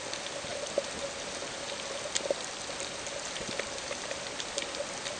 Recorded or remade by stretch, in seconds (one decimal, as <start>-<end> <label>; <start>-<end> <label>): 0.0-5.2 recorded